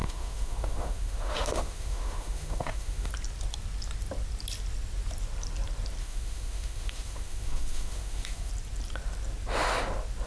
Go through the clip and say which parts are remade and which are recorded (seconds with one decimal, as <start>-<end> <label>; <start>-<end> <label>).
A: 0.0-3.1 remade; 3.1-6.0 recorded; 6.0-8.5 remade; 8.5-10.3 recorded